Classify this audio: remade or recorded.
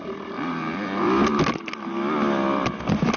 recorded